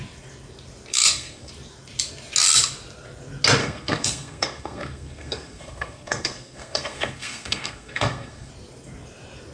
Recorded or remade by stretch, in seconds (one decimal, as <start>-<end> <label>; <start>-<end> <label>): 0.0-0.9 recorded; 0.9-1.5 remade; 1.5-3.6 recorded; 3.6-8.5 remade; 8.5-9.5 recorded